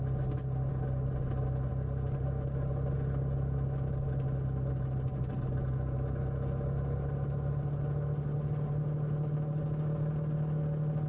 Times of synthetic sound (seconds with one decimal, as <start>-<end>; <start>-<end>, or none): none